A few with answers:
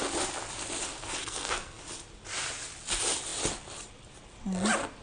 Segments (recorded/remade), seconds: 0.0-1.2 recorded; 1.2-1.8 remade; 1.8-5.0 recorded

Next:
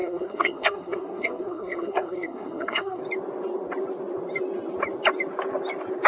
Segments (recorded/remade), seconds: 0.0-3.0 remade; 3.0-6.1 recorded

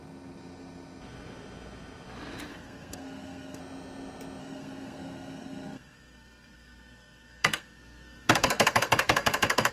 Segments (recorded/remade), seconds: 0.0-2.5 recorded; 2.5-3.6 remade; 3.6-4.4 recorded; 4.4-9.7 remade

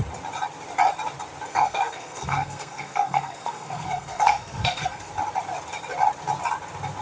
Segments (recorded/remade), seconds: 0.0-1.5 recorded; 1.5-5.1 remade; 5.1-7.0 recorded